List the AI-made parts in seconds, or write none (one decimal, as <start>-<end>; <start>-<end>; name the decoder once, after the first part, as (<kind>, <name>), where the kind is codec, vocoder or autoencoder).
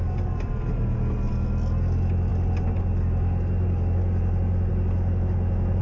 none